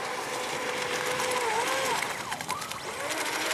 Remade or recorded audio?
recorded